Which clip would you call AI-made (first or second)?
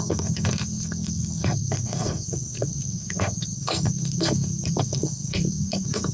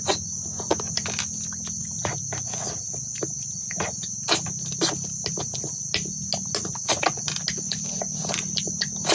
first